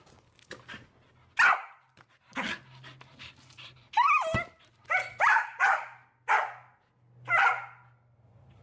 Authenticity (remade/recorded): recorded